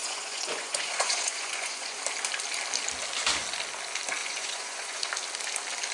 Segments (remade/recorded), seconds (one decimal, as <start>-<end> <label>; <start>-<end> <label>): 0.0-2.0 remade; 2.0-4.2 recorded; 4.2-5.1 remade; 5.1-5.9 recorded